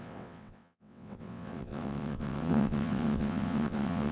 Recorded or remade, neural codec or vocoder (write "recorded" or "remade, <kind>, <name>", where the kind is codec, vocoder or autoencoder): remade, vocoder, WaveNeXt